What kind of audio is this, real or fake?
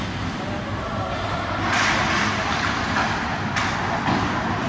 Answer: real